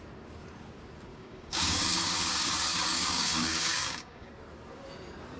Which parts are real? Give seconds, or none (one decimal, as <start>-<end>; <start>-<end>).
0.0-1.1; 4.3-5.4